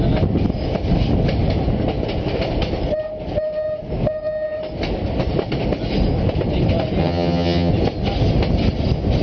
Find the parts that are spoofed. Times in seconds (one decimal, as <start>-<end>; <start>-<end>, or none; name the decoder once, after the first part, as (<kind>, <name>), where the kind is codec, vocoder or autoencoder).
7.0-7.7 (vocoder, HiFi-GAN)